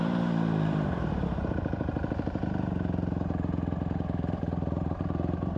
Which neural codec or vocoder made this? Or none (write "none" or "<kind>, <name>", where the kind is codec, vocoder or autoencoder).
vocoder, BigVGAN v2